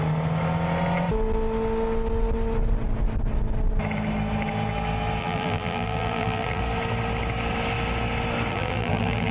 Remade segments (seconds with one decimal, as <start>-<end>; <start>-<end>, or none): 5.2-6.6; 8.5-9.3

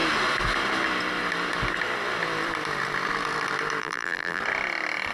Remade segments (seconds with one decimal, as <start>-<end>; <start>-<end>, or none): 3.8-4.4

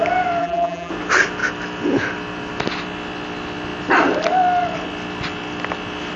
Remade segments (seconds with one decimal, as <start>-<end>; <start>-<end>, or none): 0.4-0.9